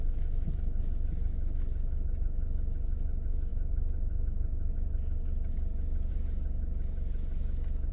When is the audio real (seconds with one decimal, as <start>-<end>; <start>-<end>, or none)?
0.0-7.9